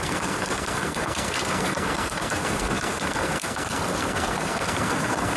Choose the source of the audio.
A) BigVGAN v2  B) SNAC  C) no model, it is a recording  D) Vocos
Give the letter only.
B